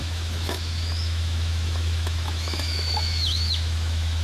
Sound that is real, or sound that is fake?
fake